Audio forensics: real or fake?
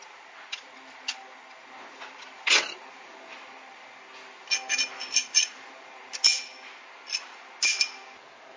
real